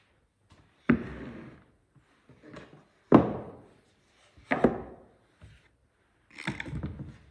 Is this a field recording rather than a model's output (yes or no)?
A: yes